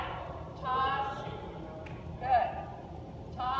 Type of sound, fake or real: real